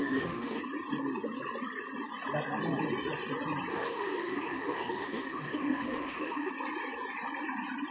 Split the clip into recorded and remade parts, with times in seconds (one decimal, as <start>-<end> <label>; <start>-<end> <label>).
0.0-0.6 remade; 0.6-3.7 recorded; 3.7-6.5 remade; 6.5-7.9 recorded